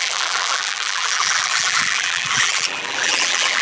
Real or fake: fake